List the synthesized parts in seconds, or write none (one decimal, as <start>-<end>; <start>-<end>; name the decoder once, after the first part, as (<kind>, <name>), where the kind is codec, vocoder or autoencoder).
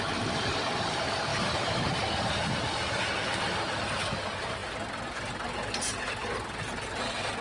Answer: 1.3-2.1 (vocoder, BigVGAN v2)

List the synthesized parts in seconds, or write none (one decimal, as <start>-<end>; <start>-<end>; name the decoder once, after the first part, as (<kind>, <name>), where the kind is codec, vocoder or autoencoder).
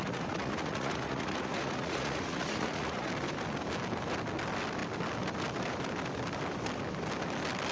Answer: 0.0-3.1 (vocoder, Vocos)